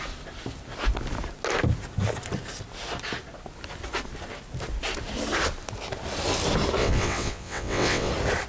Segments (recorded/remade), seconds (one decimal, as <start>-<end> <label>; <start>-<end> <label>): 0.0-6.8 recorded; 6.8-8.1 remade; 8.1-8.5 recorded